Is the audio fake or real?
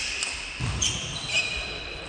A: fake